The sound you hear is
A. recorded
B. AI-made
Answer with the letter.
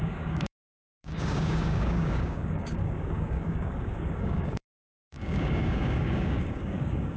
B